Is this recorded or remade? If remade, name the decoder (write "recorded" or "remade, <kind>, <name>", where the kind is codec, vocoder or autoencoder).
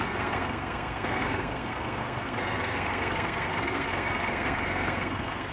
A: remade, codec, SNAC